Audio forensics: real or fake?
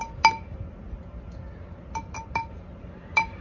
real